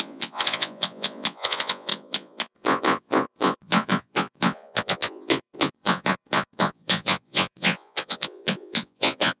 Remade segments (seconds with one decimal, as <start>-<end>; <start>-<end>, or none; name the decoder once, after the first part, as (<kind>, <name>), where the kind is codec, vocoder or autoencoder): 0.0-9.4 (vocoder, Vocos)